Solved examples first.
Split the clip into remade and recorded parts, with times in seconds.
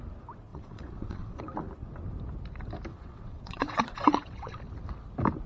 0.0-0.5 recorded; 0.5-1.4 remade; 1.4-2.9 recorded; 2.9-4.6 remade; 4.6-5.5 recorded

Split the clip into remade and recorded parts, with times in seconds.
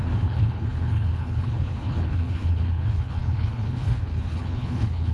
0.0-5.1 remade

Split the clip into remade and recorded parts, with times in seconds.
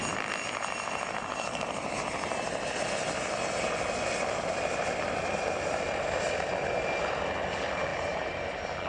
0.0-7.9 recorded; 7.9-8.5 remade; 8.5-8.9 recorded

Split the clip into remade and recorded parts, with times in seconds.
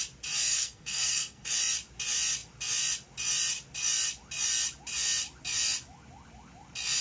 0.0-0.5 recorded; 0.5-1.5 remade; 1.5-7.0 recorded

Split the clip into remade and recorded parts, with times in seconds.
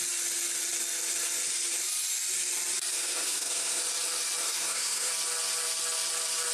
0.0-2.9 recorded; 2.9-3.8 remade; 3.8-4.4 recorded; 4.4-5.1 remade; 5.1-6.5 recorded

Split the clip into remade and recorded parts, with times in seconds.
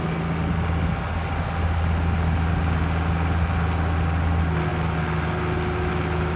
0.0-6.4 recorded